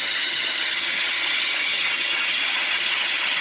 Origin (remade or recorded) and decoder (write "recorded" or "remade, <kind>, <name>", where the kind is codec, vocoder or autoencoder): remade, vocoder, HiFi-GAN